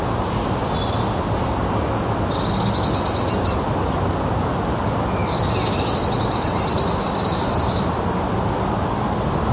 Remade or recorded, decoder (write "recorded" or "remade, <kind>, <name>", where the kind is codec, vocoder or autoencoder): recorded